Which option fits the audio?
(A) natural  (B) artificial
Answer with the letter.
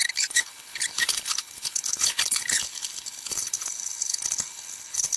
B